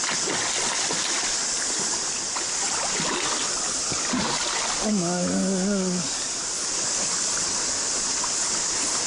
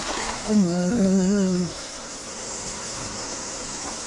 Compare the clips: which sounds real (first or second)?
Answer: first